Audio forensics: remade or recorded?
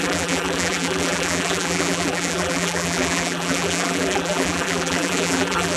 remade